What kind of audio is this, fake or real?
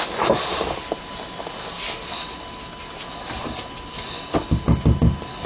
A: real